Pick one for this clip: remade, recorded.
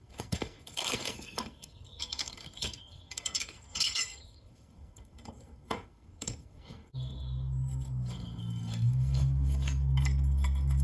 remade